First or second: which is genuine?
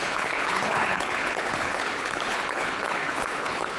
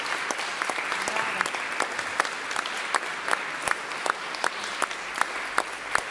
second